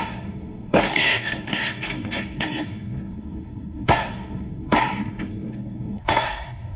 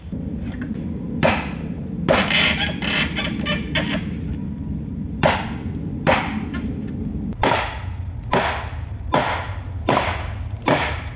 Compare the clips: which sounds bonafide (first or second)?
second